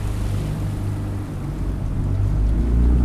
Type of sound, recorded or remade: recorded